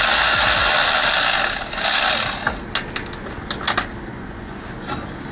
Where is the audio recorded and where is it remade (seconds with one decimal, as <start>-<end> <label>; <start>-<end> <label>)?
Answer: 0.0-4.1 recorded; 4.1-4.6 remade; 4.6-5.3 recorded